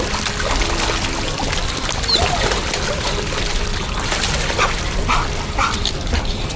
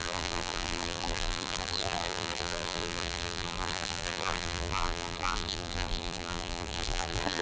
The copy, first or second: second